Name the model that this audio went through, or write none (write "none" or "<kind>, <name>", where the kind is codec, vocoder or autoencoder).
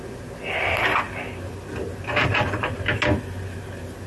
none